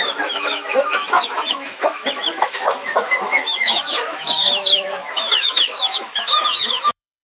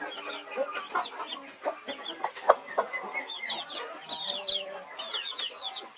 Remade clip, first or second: first